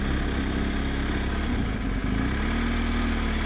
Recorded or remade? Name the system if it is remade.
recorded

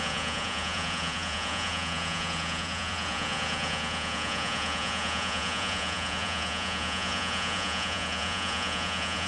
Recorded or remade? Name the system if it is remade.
remade, vocoder, Vocos